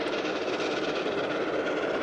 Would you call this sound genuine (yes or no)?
yes